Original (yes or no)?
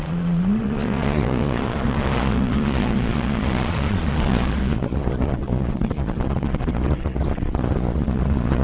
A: no